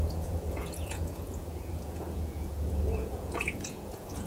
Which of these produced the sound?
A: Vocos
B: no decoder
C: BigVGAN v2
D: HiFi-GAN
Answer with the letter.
A